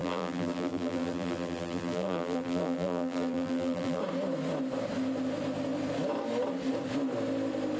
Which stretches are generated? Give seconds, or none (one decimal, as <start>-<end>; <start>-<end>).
0.0-4.0